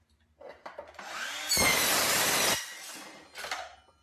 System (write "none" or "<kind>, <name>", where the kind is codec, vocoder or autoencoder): none